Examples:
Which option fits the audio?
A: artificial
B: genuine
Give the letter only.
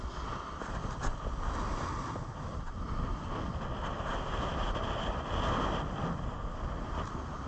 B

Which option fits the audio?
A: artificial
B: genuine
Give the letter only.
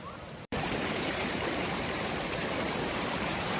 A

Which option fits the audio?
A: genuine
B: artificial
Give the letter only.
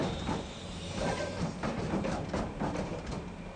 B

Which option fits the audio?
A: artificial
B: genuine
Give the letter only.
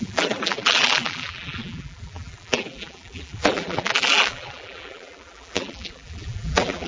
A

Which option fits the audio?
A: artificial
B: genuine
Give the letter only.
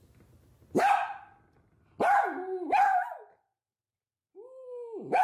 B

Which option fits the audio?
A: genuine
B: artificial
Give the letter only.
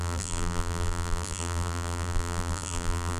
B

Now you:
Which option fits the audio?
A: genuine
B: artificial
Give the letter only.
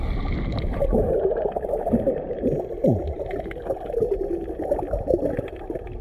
A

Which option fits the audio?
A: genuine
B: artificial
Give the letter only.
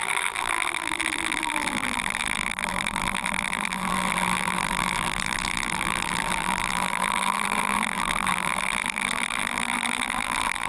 B